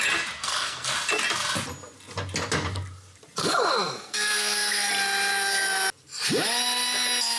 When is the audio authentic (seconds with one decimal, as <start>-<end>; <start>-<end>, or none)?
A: 0.0-0.4; 0.9-3.4; 4.9-7.4